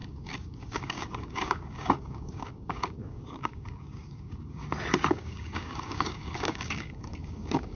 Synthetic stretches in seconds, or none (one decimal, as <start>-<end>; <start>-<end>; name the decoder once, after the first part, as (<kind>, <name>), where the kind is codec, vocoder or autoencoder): 0.0-4.6 (codec, DAC); 5.1-7.7